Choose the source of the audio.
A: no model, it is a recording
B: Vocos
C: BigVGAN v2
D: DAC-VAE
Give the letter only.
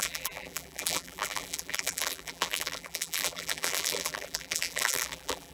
C